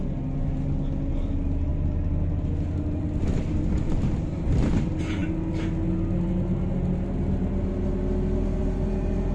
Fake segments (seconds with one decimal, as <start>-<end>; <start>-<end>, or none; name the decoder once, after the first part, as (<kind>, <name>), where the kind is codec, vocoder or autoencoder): none